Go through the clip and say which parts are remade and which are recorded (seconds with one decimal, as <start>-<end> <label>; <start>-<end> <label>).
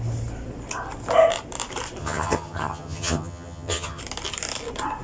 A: 0.0-2.0 recorded; 2.0-4.0 remade; 4.0-5.0 recorded